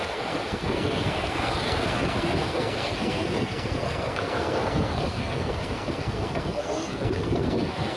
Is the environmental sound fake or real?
fake